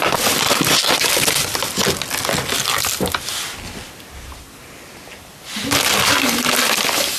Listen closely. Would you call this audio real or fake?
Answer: real